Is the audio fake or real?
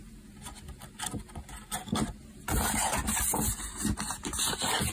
real